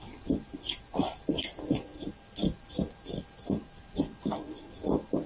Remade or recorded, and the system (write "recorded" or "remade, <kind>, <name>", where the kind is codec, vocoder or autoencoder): recorded